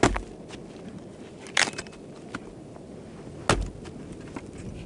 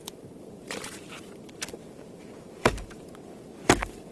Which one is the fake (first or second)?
second